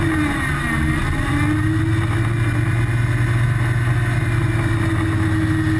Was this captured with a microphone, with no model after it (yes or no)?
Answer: yes